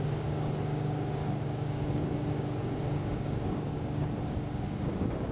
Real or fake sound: fake